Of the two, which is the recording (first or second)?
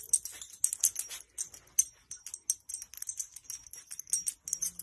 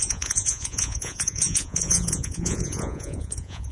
first